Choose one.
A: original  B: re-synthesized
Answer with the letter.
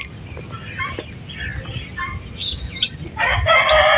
A